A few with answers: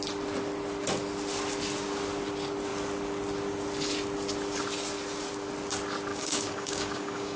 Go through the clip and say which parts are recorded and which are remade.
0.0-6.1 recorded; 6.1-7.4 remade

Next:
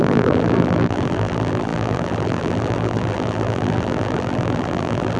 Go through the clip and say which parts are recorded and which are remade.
0.0-5.2 remade

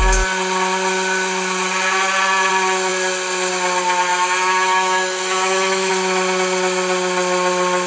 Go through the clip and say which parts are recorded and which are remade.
0.0-4.1 recorded; 4.1-5.9 remade; 5.9-7.9 recorded

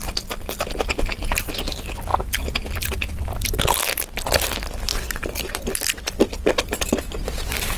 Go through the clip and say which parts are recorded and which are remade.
0.0-7.8 recorded